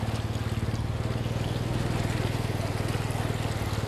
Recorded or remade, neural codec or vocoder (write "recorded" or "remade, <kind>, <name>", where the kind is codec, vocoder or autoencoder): recorded